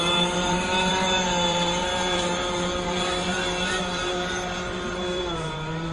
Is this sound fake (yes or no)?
yes